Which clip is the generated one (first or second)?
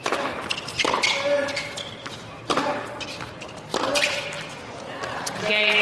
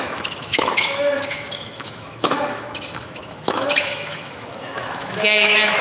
second